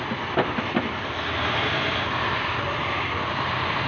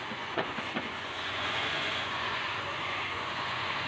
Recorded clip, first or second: first